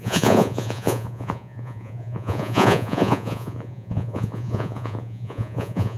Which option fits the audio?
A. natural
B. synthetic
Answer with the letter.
B